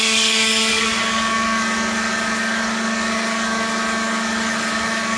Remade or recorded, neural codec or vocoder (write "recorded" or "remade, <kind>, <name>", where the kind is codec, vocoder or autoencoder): remade, codec, DAC